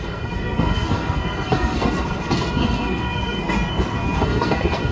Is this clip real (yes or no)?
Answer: no